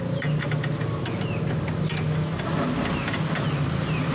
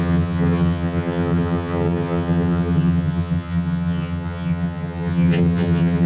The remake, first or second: second